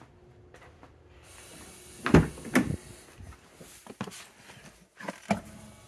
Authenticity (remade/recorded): recorded